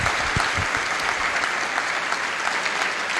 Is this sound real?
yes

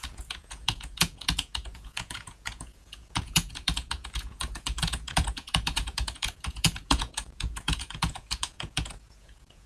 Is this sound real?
no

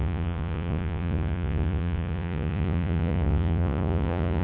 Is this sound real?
no